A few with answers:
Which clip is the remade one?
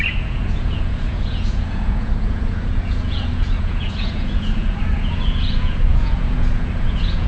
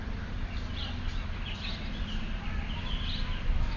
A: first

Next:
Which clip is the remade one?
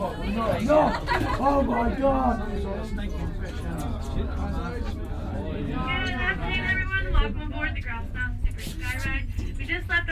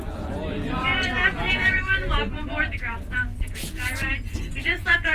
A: second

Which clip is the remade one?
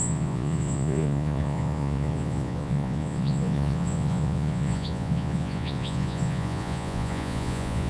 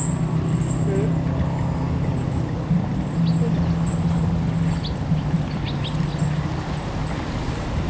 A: first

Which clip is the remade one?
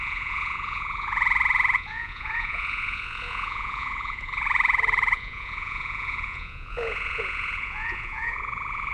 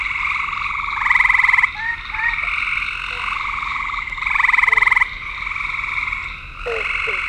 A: first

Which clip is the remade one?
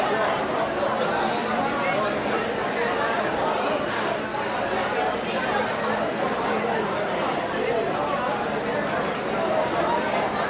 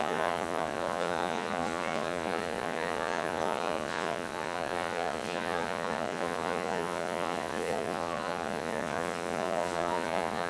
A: second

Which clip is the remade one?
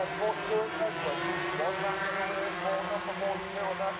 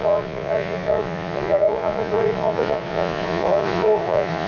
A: second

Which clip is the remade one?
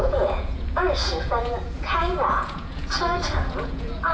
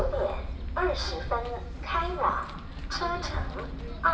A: first